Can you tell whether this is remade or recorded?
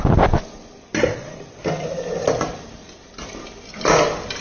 recorded